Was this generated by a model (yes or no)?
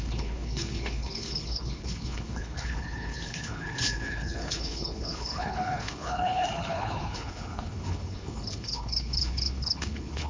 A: yes